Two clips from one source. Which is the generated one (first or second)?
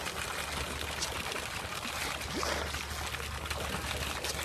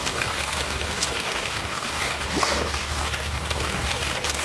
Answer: second